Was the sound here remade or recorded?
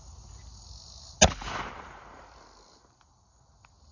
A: recorded